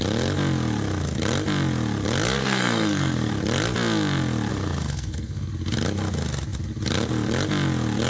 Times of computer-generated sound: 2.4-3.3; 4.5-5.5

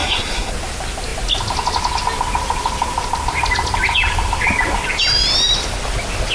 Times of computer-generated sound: 0.0-0.5

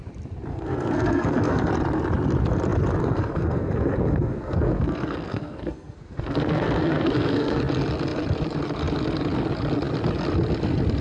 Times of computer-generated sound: 0.5-1.7; 3.0-7.6

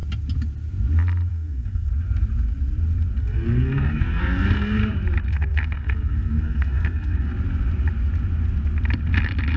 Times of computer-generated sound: 1.3-1.9; 3.2-4.8; 5.3-7.3